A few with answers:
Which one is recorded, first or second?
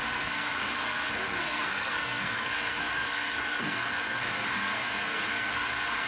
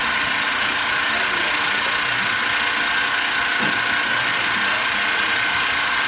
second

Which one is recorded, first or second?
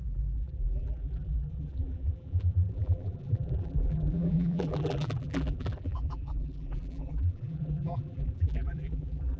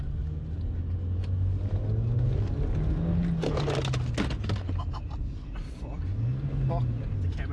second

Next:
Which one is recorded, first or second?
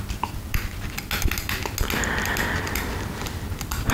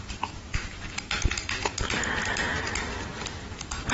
first